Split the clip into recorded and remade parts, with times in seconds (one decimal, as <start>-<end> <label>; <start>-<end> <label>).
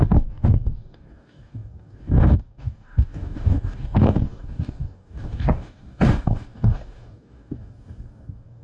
0.0-8.6 remade